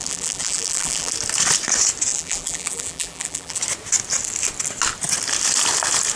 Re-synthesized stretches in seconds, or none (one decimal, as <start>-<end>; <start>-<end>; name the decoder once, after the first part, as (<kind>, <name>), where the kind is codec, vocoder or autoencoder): 0.0-1.1 (vocoder, BigVGAN v2); 2.1-3.6